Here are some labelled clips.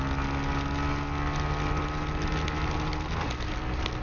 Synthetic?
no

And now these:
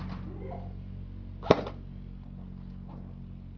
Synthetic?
no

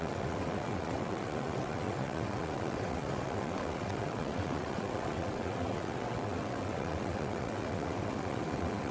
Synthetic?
yes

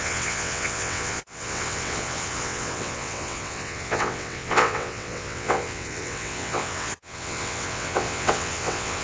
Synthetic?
yes